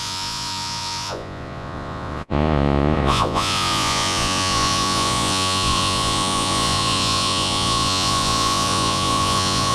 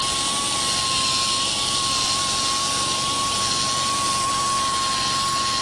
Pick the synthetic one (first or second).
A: first